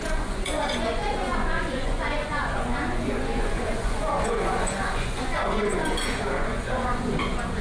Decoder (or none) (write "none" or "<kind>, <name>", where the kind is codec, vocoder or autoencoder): vocoder, Vocos